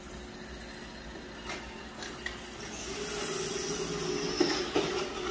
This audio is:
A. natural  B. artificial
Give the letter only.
A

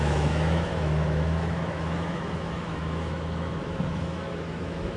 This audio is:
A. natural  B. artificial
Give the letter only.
B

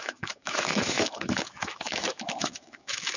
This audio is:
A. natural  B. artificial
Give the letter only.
B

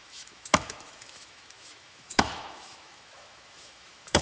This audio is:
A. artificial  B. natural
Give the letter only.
A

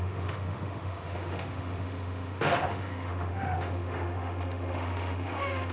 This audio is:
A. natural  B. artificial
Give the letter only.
B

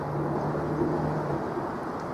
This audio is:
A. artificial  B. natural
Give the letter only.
B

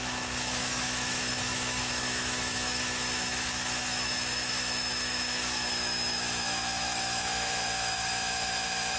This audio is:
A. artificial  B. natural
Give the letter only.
A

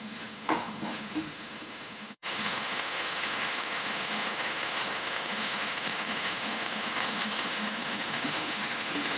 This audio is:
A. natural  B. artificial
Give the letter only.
B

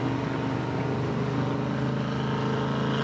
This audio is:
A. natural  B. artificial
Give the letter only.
A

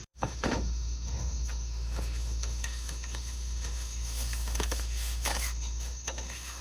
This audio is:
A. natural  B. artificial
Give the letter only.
B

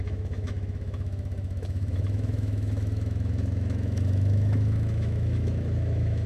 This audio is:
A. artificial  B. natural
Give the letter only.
A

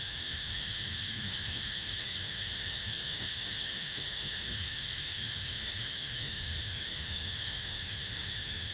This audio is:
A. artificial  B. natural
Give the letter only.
A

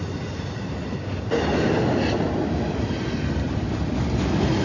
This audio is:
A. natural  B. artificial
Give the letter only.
A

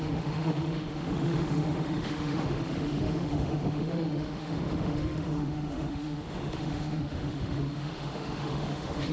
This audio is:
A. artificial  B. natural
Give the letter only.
A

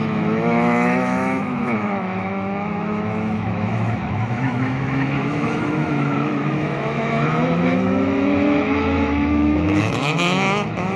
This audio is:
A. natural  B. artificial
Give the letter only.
B